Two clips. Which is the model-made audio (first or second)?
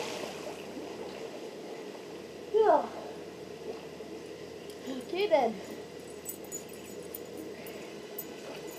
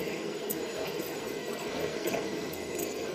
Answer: second